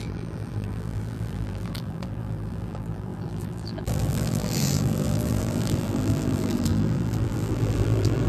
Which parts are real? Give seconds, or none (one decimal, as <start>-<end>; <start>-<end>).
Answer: none